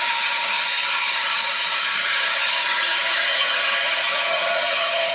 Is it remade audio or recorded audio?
remade